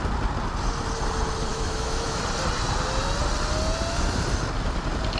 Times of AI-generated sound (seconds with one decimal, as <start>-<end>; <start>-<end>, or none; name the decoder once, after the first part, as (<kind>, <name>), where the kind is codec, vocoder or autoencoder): 1.5-2.2 (autoencoder, DAC-VAE)